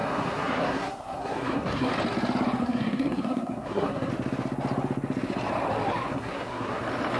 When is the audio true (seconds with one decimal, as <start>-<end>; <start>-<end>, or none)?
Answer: 1.9-2.6; 4.1-6.1; 6.8-7.2